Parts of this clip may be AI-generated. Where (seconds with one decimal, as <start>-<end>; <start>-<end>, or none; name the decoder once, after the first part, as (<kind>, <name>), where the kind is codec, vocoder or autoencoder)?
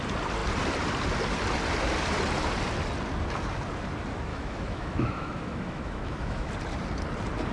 4.3-6.5 (autoencoder, DAC-VAE)